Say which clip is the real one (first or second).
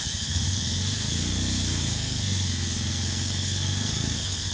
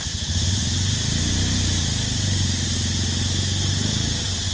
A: second